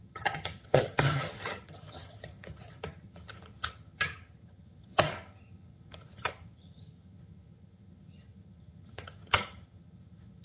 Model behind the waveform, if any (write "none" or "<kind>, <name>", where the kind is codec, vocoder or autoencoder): vocoder, HiFi-GAN